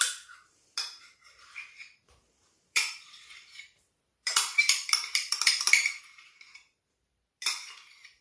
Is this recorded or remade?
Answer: remade